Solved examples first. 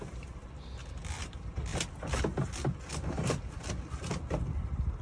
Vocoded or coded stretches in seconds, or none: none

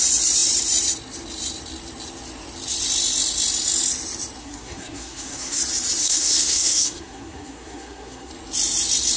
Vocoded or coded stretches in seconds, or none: 4.4-5.6 (codec, SNAC); 6.0-8.3